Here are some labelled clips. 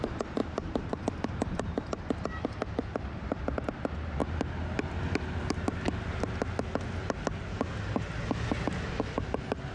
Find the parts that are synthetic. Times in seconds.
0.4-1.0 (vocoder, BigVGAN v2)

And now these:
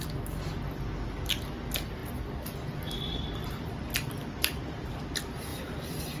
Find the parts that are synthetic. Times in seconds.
2.0-4.9 (vocoder, BigVGAN v2); 5.5-6.2

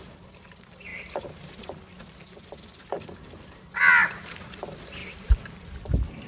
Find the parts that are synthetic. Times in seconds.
none

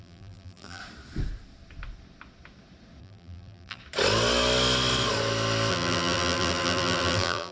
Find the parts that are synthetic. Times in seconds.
0.0-0.8 (vocoder, BigVGAN v2); 3.0-3.8; 5.7-7.5

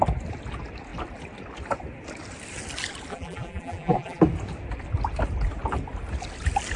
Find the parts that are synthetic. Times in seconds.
3.1-4.2 (vocoder, BigVGAN v2)

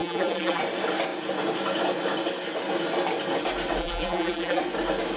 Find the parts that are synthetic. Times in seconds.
0.0-0.6 (vocoder, BigVGAN v2); 3.8-4.6